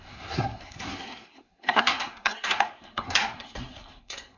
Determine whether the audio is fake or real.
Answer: fake